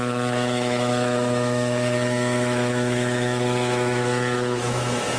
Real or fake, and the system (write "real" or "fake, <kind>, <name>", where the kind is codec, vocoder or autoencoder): fake, autoencoder, DAC-VAE